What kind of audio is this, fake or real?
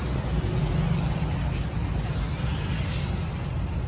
real